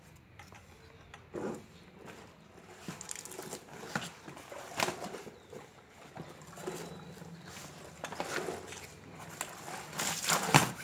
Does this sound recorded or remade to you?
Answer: recorded